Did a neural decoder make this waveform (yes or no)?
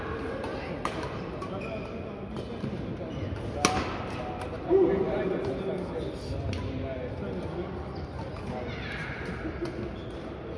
no